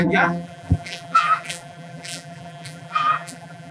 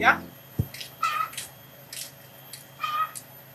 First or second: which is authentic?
second